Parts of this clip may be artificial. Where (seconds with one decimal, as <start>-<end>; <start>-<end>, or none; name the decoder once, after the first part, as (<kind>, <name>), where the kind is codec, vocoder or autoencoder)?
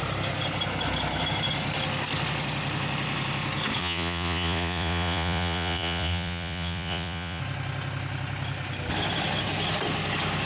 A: 3.8-7.4 (vocoder, Vocos)